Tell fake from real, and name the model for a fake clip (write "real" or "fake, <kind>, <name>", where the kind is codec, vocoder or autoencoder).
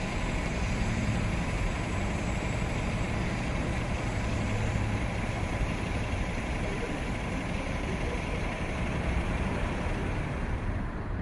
fake, vocoder, BigVGAN v2